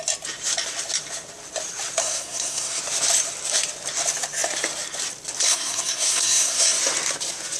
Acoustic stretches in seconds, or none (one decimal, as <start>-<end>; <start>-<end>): 0.0-2.0; 2.8-5.4; 6.8-7.6